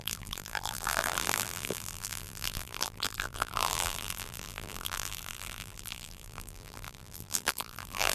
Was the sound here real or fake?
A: fake